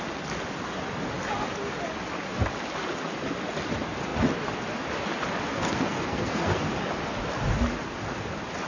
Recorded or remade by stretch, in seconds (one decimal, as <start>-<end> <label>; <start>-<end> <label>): 0.0-5.5 recorded; 5.5-6.7 remade; 6.7-8.7 recorded